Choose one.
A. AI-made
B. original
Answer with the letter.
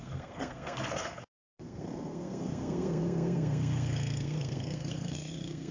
A